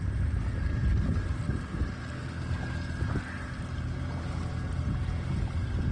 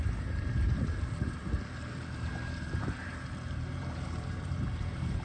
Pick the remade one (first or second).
second